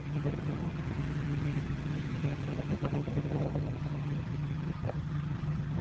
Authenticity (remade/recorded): remade